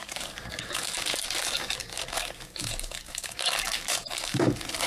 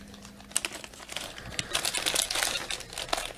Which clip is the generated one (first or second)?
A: first